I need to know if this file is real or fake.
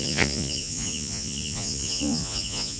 fake